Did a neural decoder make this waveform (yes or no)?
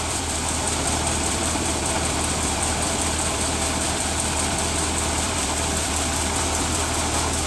yes